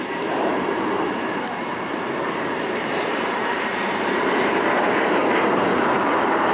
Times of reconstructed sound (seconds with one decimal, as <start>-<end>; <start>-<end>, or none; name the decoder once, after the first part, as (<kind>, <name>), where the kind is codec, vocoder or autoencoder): 0.0-5.2 (vocoder, BigVGAN v2); 6.0-6.5